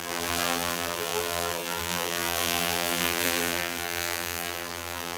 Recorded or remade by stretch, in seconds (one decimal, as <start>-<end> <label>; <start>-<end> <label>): 0.0-5.2 remade